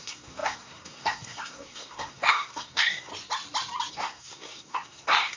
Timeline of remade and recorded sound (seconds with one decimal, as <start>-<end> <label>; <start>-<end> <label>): 0.0-3.1 remade; 3.1-3.9 recorded; 3.9-5.4 remade